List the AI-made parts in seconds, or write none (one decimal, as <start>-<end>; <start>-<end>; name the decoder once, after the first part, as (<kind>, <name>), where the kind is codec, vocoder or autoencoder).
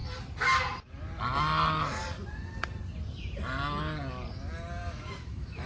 4.8-5.7 (autoencoder, DAC-VAE)